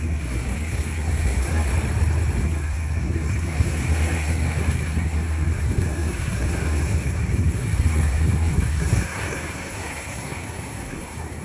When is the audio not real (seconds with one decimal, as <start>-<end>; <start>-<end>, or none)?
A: 0.0-1.7; 2.4-11.4